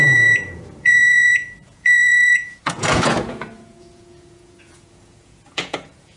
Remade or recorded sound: remade